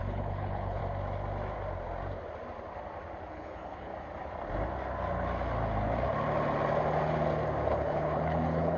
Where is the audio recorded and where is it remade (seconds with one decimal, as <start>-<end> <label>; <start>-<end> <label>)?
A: 0.0-0.8 remade; 0.8-3.3 recorded; 3.3-3.9 remade; 3.9-7.7 recorded; 7.7-8.8 remade